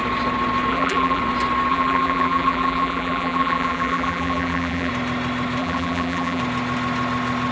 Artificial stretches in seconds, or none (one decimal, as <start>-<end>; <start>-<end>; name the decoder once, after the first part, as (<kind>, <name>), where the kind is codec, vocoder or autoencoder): 0.7-1.2 (vocoder, BigVGAN v2); 1.7-4.9; 5.6-6.4